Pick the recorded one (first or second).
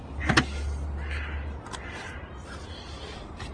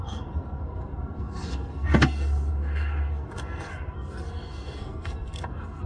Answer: first